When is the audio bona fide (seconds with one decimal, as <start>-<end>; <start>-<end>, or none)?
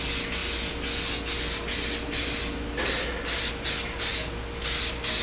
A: 0.0-5.2